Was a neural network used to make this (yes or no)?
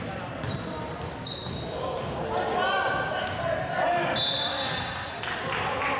no